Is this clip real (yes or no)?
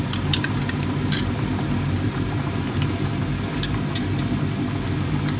yes